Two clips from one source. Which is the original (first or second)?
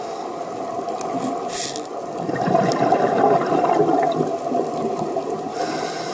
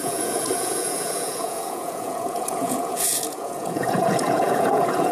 first